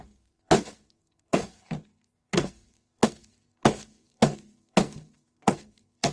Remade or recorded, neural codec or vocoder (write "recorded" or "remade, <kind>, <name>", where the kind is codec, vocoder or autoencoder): remade, codec, SNAC